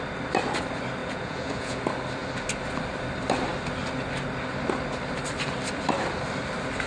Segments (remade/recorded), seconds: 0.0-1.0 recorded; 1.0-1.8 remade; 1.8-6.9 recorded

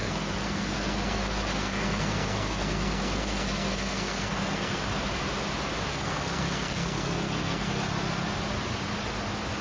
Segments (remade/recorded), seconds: 0.0-4.8 remade; 4.8-5.9 recorded; 5.9-7.7 remade; 7.7-9.6 recorded